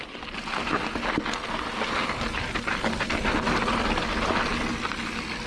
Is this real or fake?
real